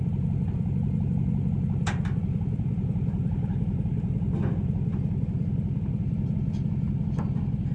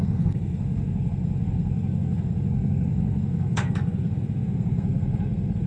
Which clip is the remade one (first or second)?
second